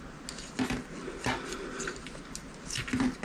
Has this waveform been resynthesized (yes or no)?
no